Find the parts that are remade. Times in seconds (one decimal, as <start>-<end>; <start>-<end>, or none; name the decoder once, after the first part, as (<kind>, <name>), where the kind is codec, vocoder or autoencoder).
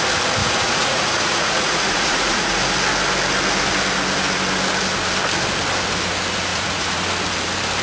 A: 0.4-2.6 (vocoder, Vocos); 6.5-7.0